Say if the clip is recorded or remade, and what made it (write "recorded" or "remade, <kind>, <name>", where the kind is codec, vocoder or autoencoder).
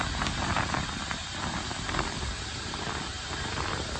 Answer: recorded